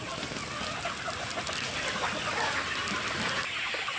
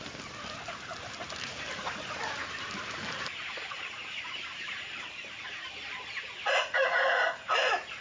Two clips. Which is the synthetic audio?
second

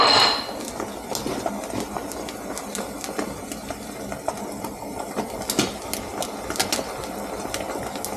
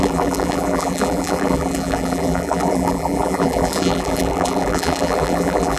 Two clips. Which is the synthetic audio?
second